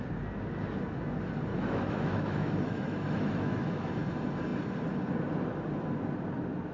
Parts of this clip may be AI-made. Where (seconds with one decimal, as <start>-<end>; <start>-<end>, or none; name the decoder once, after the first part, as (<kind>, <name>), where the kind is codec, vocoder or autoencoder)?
1.5-3.9 (autoencoder, DAC-VAE)